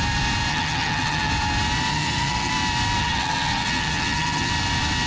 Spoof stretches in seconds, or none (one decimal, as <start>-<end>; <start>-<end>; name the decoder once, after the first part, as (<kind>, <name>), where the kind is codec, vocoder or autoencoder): 0.5-1.3 (vocoder, HiFi-GAN); 1.9-2.5; 3.0-4.5